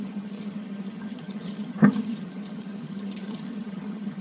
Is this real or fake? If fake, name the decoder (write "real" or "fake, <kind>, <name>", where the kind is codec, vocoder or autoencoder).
fake, vocoder, HiFi-GAN